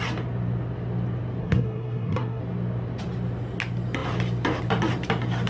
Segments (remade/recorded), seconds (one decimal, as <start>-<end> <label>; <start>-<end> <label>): 0.0-1.4 recorded; 1.4-2.4 remade; 2.4-5.5 recorded